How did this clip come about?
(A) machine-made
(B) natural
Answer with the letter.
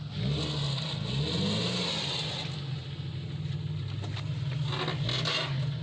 B